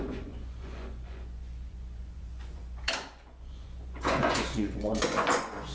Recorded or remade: remade